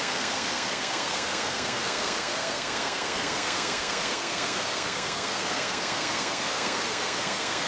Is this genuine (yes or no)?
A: no